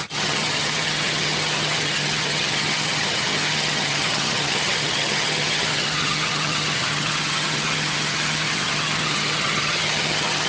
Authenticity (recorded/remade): remade